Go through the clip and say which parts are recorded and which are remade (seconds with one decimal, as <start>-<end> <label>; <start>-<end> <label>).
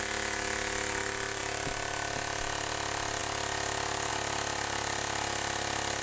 0.0-6.0 recorded